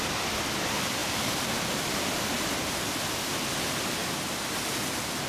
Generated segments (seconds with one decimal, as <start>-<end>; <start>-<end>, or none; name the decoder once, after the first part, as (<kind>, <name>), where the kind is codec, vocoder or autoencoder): 1.0-2.0 (vocoder, BigVGAN v2)